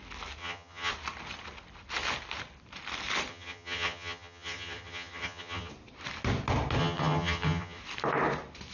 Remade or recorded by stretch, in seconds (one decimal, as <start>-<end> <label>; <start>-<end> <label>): 0.0-0.4 recorded; 0.4-0.9 remade; 0.9-3.3 recorded; 3.3-5.7 remade; 5.7-6.8 recorded; 6.8-7.8 remade; 7.8-8.7 recorded